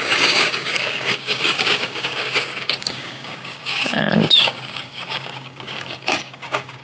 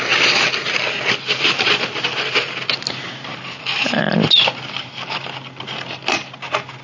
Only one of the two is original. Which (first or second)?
second